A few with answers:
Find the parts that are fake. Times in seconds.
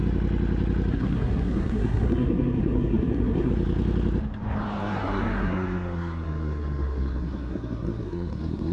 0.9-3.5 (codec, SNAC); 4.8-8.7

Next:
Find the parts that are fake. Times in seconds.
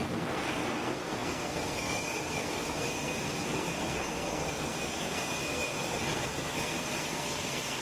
0.0-7.8 (codec, SNAC)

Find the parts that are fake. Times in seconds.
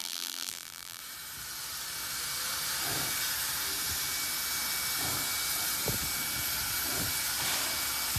0.0-1.0 (vocoder, BigVGAN v2)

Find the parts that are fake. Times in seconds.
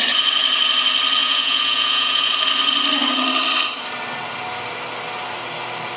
1.2-2.3 (vocoder, Vocos)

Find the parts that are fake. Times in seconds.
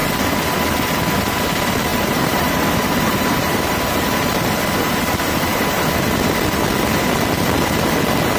1.9-4.6 (vocoder, BigVGAN v2)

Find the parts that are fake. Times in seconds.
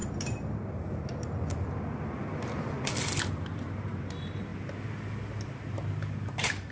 3.3-4.5 (vocoder, BigVGAN v2); 6.3-6.7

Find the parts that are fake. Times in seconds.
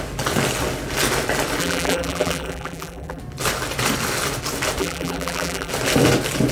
1.6-3.2 (vocoder, BigVGAN v2); 4.8-5.7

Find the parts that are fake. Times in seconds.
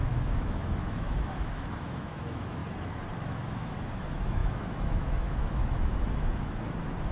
0.0-2.6 (autoencoder, DAC-VAE); 3.1-7.1